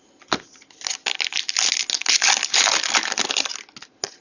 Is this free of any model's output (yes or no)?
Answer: yes